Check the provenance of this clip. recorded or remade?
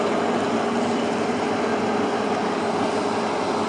recorded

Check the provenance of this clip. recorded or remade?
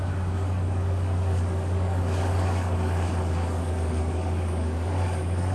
remade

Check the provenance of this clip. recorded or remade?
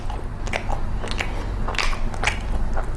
recorded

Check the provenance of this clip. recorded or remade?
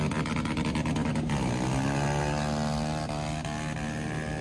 recorded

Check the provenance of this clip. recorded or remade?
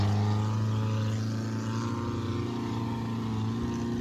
recorded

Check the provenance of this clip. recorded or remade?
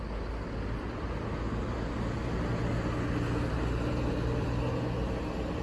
recorded